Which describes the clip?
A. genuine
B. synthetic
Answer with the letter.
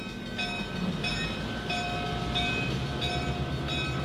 A